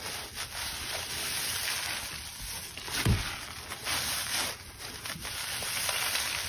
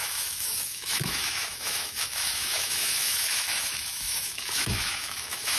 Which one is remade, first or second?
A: second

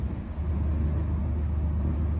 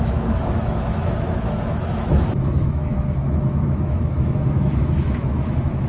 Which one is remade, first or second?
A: second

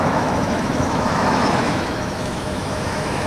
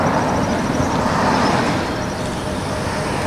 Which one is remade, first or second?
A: first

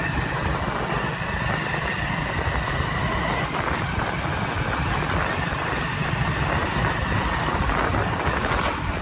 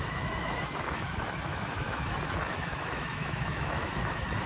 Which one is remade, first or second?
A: second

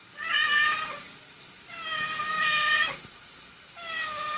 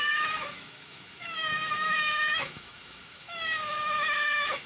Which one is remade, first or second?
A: second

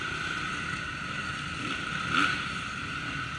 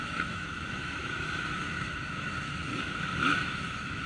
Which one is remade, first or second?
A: second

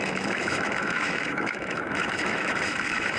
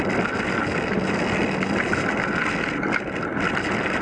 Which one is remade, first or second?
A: first